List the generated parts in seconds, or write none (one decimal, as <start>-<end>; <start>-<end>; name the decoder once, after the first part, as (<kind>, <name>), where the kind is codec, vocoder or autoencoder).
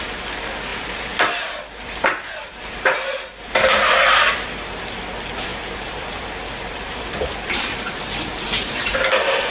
0.7-4.8 (vocoder, BigVGAN v2); 5.5-8.4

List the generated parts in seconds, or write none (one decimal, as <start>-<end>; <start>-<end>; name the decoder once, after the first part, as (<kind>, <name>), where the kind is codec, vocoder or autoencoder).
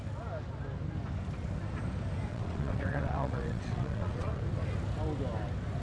2.3-4.4 (vocoder, WaveNeXt)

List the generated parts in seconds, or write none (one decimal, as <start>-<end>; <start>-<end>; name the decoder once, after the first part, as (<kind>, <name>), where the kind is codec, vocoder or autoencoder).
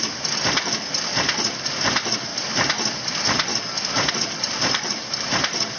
0.0-2.3 (vocoder, BigVGAN v2); 4.1-5.8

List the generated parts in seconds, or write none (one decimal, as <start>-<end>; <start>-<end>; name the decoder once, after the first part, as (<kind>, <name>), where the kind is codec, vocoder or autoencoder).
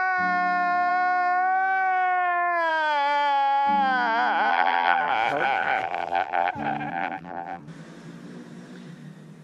4.5-5.1 (vocoder, BigVGAN v2); 5.8-6.5; 6.9-7.6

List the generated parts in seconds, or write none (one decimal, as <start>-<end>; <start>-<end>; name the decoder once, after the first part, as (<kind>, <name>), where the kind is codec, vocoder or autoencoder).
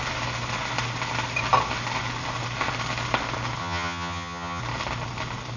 3.6-4.6 (vocoder, HiFi-GAN)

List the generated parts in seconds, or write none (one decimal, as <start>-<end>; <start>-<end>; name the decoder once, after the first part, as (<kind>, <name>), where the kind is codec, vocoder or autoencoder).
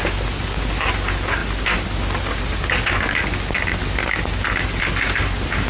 none